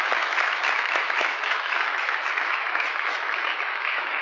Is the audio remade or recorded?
remade